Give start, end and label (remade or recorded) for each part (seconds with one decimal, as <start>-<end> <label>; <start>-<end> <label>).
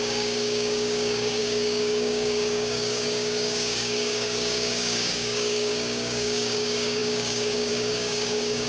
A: 0.0-8.7 remade